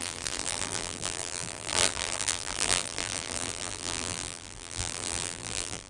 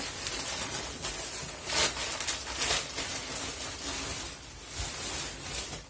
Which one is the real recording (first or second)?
second